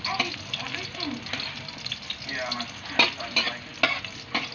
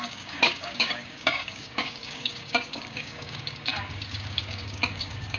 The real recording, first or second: first